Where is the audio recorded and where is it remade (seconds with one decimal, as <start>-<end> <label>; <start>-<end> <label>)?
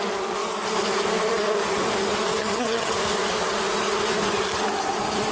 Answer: 0.0-2.4 recorded; 2.4-2.9 remade; 2.9-5.3 recorded